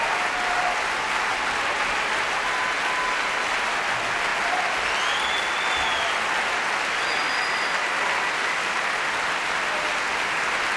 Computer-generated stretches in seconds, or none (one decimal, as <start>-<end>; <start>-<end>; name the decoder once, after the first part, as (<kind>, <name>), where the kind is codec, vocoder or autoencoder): 4.3-4.9 (vocoder, BigVGAN v2)